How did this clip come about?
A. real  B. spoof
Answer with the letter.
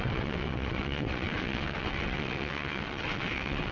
B